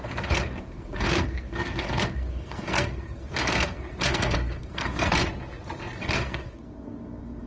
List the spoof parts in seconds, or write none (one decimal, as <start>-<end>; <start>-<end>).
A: 0.0-5.2; 6.0-7.5